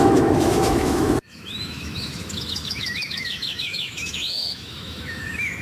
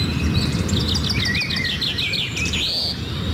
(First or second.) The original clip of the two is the second